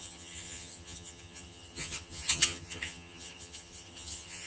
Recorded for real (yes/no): no